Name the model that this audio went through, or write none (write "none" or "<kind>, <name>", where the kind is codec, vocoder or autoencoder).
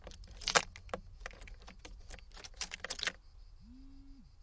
none